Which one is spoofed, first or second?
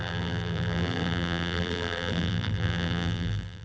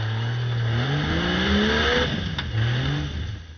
first